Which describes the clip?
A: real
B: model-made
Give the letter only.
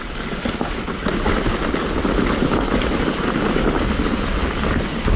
A